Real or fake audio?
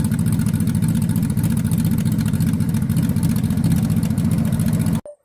real